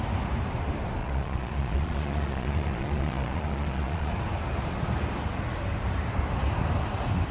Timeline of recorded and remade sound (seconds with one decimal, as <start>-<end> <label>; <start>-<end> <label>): 0.0-1.0 recorded; 1.0-4.1 remade; 4.1-7.3 recorded